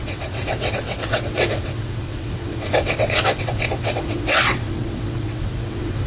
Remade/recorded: remade